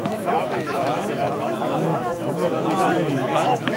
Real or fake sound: fake